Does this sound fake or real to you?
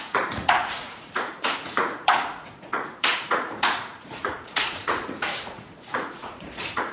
fake